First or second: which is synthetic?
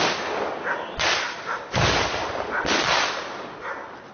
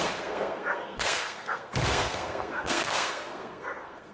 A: second